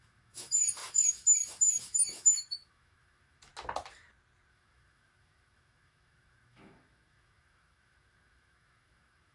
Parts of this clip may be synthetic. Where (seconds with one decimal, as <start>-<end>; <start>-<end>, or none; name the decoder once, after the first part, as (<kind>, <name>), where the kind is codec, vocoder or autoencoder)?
0.0-3.5 (autoencoder, DAC-VAE); 4.5-9.3